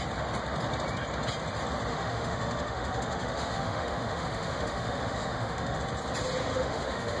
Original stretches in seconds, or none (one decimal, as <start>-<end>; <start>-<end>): 0.0-1.9; 5.8-6.5